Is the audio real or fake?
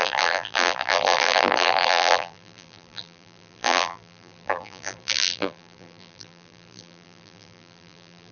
fake